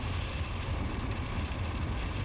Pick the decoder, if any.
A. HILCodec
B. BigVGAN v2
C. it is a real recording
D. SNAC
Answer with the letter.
C